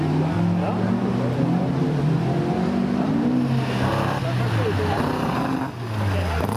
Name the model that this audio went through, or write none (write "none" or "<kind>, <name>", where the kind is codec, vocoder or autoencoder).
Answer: none